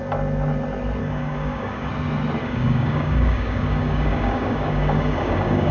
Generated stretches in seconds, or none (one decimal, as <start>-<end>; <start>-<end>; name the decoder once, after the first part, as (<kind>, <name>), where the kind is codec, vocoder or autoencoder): 1.0-1.9 (codec, DAC); 2.4-5.7